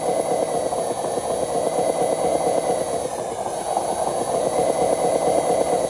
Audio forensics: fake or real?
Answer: real